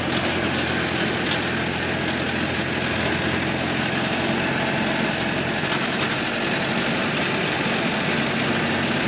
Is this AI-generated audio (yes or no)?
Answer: no